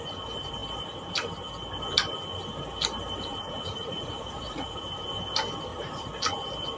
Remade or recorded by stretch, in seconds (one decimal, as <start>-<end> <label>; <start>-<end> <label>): 0.0-3.3 recorded; 3.3-4.9 remade; 4.9-5.7 recorded; 5.7-6.2 remade; 6.2-6.8 recorded